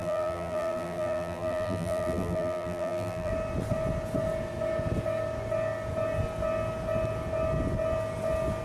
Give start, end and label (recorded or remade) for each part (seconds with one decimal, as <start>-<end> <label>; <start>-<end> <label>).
0.0-3.3 remade; 3.3-8.6 recorded